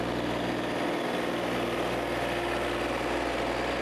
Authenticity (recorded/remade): recorded